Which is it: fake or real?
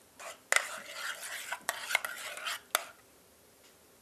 real